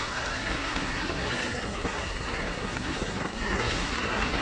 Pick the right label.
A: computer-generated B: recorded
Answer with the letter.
A